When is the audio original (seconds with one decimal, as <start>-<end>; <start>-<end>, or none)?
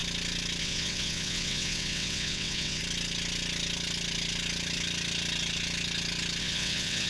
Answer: 0.0-0.6; 2.8-6.4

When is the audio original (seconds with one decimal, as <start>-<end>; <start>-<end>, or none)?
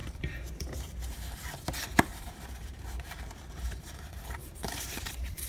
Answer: 1.5-2.1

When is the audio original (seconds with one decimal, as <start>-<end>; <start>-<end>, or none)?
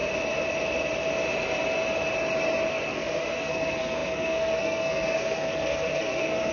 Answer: 0.0-2.7